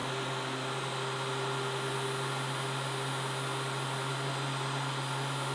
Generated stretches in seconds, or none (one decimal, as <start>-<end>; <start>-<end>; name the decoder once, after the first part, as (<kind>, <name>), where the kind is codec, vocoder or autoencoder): none